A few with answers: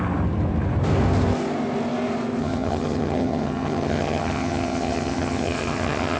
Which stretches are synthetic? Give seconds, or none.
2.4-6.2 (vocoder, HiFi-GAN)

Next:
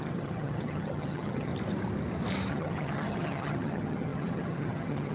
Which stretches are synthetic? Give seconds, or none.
0.0-1.5 (vocoder, HiFi-GAN); 2.5-5.1

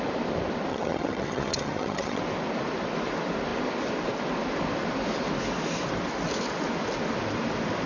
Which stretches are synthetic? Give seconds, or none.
0.7-2.2 (vocoder, HiFi-GAN)

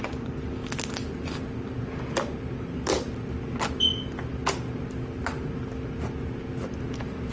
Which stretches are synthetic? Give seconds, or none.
none

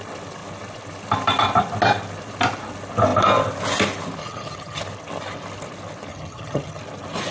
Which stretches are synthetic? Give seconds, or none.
4.2-4.8 (vocoder, HiFi-GAN); 6.1-6.8

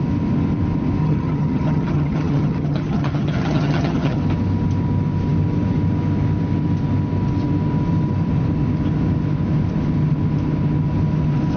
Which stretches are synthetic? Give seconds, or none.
1.0-4.2 (vocoder, HiFi-GAN)